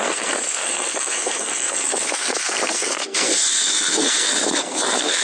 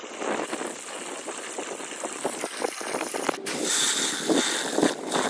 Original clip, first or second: second